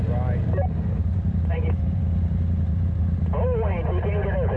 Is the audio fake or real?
real